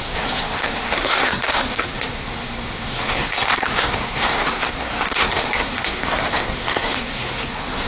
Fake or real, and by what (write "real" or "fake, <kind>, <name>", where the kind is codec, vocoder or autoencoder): fake, codec, SNAC